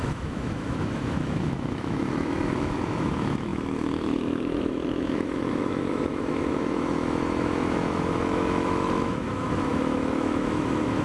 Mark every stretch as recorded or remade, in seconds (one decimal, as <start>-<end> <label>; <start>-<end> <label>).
0.0-11.0 remade